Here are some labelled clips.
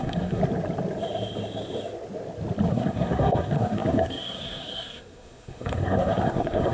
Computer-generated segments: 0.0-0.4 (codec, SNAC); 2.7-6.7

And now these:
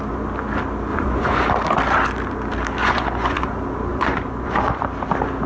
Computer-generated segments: 0.9-1.5 (vocoder, Vocos); 2.8-3.5; 3.9-4.8

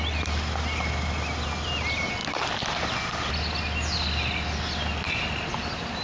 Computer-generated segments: none

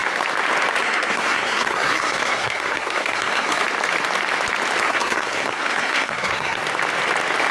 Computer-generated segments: 0.8-3.6 (codec, SNAC); 4.8-6.6